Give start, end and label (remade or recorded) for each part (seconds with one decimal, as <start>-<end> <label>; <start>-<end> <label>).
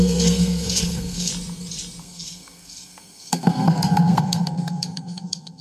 0.0-1.3 remade; 1.3-2.0 recorded; 2.0-5.6 remade